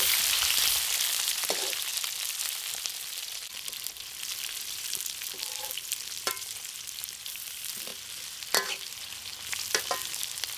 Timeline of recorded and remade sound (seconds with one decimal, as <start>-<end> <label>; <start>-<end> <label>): 0.0-7.9 remade; 7.9-8.7 recorded; 8.7-10.6 remade